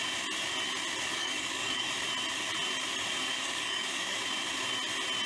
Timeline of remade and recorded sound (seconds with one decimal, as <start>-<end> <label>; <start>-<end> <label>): 0.0-1.1 recorded; 1.1-1.9 remade; 1.9-3.3 recorded; 3.3-4.2 remade; 4.2-5.3 recorded